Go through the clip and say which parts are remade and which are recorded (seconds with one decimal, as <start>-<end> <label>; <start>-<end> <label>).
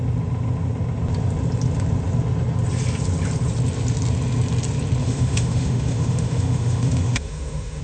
0.0-5.0 recorded; 5.0-7.8 remade